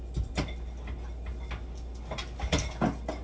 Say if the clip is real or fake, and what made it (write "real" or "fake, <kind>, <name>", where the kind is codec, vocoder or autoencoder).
real